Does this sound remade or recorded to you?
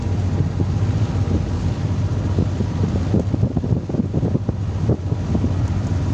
recorded